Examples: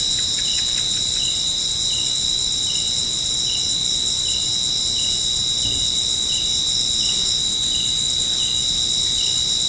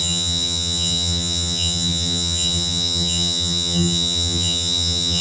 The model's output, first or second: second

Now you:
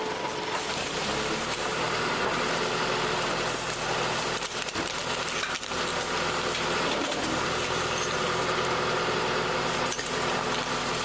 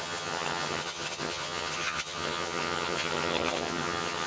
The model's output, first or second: second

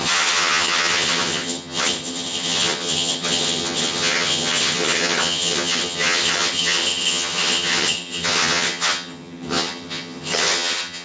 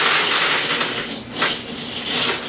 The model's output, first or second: first